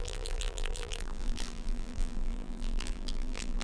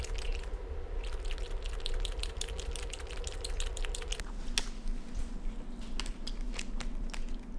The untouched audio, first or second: second